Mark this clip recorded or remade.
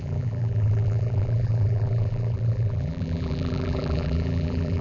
remade